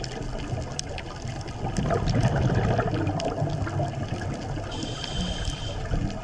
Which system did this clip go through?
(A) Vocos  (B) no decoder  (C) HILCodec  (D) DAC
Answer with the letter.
B